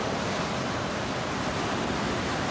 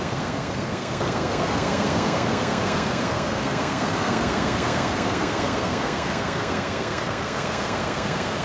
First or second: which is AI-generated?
second